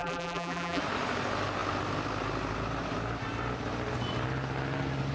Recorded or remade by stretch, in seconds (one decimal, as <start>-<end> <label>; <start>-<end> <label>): 0.0-0.8 remade; 0.8-5.1 recorded

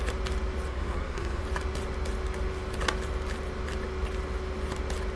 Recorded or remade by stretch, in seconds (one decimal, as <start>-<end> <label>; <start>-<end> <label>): 0.0-0.7 recorded; 0.7-1.4 remade; 1.4-5.2 recorded

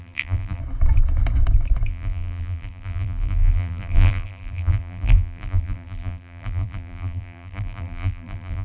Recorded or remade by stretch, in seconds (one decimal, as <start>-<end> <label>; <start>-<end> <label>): 0.0-0.6 remade; 0.6-1.9 recorded; 1.9-8.6 remade

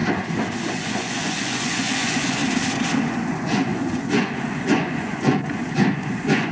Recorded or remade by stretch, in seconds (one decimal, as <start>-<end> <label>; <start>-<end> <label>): 0.0-0.7 recorded; 0.7-2.4 remade; 2.4-3.0 recorded; 3.0-6.5 remade

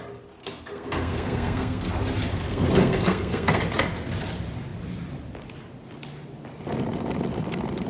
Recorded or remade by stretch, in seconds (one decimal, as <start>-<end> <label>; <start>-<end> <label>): 0.0-0.4 recorded; 0.4-1.9 remade; 1.9-2.3 recorded; 2.3-3.6 remade; 3.6-7.9 recorded

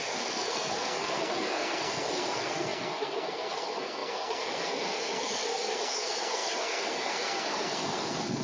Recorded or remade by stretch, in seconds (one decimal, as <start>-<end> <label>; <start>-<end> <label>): 0.0-8.4 remade

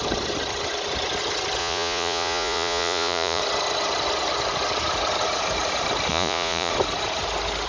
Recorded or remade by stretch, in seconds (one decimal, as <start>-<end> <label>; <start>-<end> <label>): 0.0-1.6 recorded; 1.6-3.4 remade; 3.4-6.1 recorded; 6.1-6.7 remade; 6.7-7.7 recorded

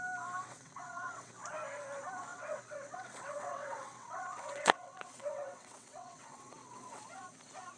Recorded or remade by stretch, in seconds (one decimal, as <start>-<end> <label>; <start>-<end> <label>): 0.0-0.4 recorded; 0.4-1.3 remade; 1.3-2.3 recorded; 2.3-7.0 remade; 7.0-7.8 recorded